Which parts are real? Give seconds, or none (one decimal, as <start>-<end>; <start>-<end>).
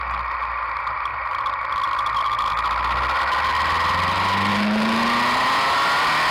0.0-6.3